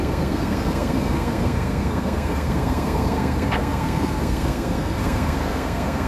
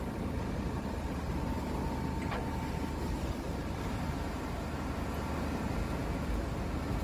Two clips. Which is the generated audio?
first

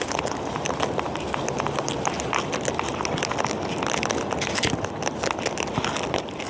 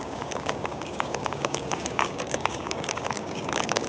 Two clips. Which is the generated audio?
second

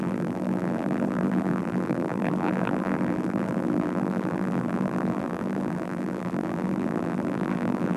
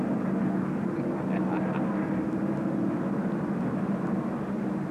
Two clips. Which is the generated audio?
first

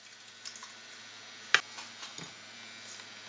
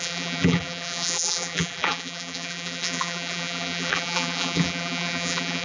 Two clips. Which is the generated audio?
second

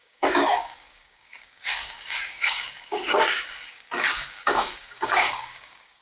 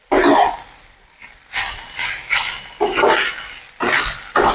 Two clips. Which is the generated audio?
first